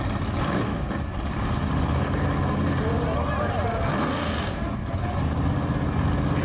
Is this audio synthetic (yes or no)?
no